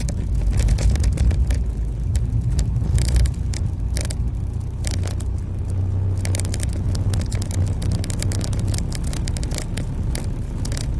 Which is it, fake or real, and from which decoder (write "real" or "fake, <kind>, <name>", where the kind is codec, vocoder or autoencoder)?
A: real